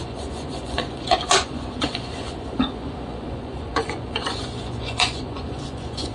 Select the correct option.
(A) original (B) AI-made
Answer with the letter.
B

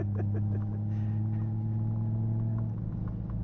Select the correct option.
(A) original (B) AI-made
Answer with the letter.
A